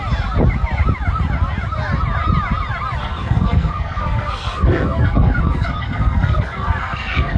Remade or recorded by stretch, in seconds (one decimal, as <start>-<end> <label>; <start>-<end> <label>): 0.0-3.0 recorded; 3.0-7.4 remade